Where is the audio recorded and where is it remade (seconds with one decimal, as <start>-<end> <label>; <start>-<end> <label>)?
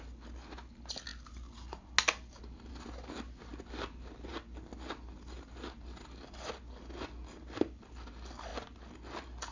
0.0-9.5 recorded